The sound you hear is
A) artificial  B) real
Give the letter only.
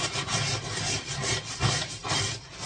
B